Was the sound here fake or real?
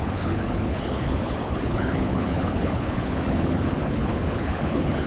fake